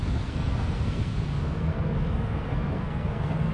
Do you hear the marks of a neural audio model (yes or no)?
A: yes